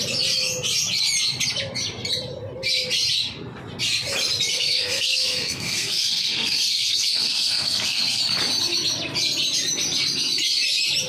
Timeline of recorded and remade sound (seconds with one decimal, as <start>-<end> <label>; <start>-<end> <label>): 0.0-4.5 recorded; 4.5-8.2 remade; 8.2-11.1 recorded